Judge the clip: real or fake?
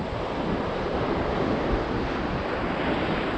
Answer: real